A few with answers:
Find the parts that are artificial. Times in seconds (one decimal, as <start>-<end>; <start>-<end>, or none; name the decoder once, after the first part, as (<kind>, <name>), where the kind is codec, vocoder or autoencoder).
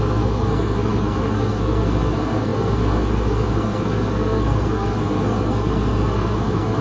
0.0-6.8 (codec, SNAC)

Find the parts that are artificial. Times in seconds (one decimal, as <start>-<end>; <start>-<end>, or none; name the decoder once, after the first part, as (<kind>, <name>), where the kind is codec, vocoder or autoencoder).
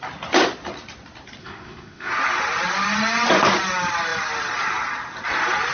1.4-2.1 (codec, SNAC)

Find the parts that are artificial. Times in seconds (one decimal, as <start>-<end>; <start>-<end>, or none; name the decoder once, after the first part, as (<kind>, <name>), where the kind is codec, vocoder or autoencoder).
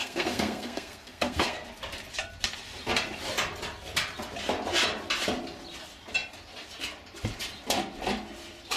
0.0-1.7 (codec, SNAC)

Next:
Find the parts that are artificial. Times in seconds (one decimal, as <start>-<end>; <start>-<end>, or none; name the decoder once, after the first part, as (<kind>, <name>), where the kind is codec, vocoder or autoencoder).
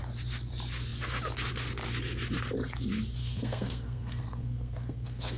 3.2-5.4 (codec, SNAC)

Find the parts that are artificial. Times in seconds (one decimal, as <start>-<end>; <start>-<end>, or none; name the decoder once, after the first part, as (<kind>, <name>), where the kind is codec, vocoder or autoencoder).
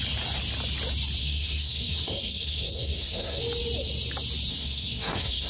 1.2-3.4 (codec, SNAC); 4.5-5.5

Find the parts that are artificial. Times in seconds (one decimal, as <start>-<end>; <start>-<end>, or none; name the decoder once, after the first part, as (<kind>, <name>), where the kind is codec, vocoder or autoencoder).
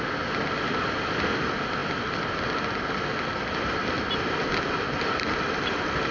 none